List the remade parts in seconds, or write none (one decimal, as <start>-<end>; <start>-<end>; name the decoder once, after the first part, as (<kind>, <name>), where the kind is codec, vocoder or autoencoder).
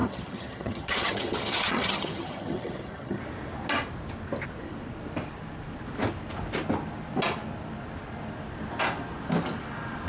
0.0-3.2 (vocoder, HiFi-GAN)